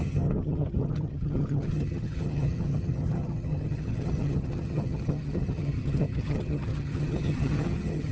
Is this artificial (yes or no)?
yes